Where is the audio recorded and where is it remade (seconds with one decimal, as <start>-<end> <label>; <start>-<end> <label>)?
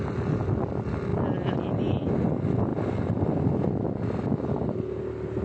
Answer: 0.0-5.4 recorded